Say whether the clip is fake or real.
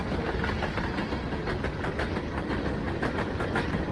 real